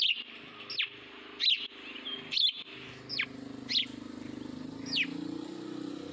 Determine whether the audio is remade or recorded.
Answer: recorded